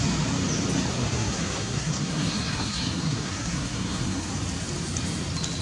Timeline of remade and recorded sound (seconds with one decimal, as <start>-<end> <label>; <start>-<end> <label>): 0.0-0.9 recorded; 0.9-4.3 remade; 4.3-5.6 recorded

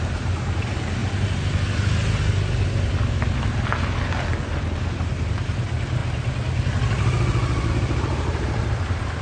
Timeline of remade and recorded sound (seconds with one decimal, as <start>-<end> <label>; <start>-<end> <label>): 0.0-1.0 remade; 1.0-5.3 recorded; 5.3-6.0 remade; 6.0-7.7 recorded; 7.7-9.2 remade

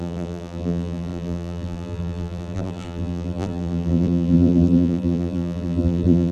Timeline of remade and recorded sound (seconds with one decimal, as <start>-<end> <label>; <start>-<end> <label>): 0.0-6.3 remade